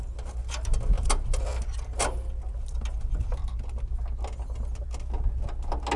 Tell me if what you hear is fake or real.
real